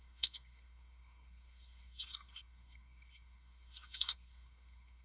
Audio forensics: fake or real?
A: fake